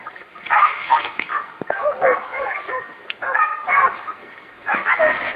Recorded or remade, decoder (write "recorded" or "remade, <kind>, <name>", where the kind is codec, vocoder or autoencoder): remade, codec, SNAC